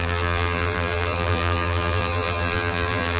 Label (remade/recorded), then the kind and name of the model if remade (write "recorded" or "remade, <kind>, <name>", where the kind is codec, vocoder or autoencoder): remade, vocoder, BigVGAN v2